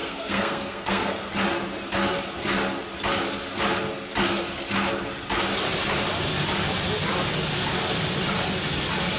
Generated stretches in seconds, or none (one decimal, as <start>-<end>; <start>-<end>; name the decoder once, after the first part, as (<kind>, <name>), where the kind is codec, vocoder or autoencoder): 0.0-1.3 (codec, SNAC)